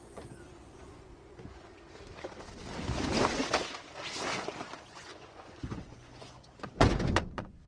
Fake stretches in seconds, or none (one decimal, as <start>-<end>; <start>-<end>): 0.0-1.7; 4.9-7.7

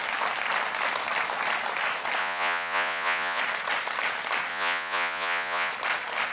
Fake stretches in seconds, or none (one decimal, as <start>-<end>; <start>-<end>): 2.2-3.4; 4.5-5.7

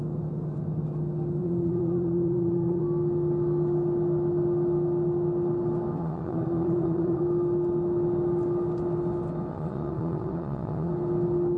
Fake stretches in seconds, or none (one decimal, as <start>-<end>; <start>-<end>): 1.4-2.8; 6.0-7.2; 9.5-10.9